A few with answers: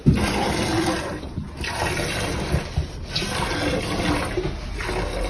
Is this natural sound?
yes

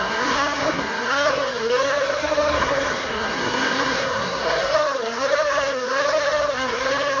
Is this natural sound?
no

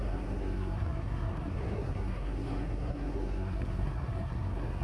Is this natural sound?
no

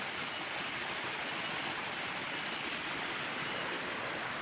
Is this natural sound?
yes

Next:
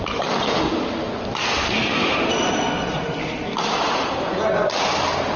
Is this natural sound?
yes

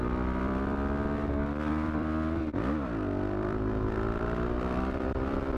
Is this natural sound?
no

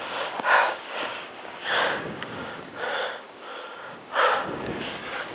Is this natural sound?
no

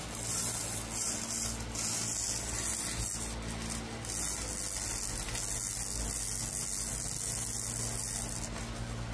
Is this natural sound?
yes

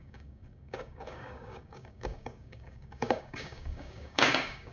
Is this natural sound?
no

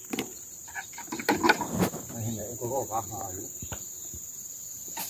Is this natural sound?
no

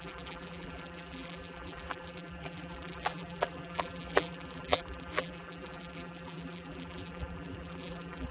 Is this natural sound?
no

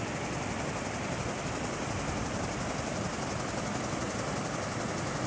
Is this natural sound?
yes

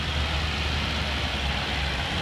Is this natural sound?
yes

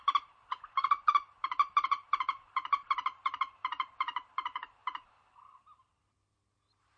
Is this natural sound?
no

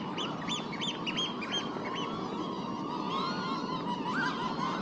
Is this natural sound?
yes